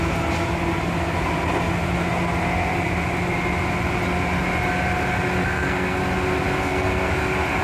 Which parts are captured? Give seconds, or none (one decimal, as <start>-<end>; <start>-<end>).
0.0-5.4; 6.0-6.6; 7.1-7.6

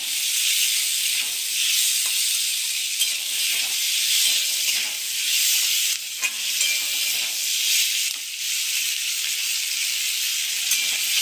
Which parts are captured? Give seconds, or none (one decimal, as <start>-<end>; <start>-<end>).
0.0-11.2